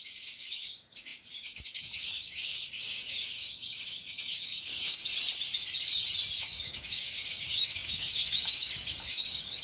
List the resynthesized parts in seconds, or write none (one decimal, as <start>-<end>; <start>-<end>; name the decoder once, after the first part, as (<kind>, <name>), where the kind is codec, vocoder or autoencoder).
0.0-5.0 (codec, DAC); 6.4-9.6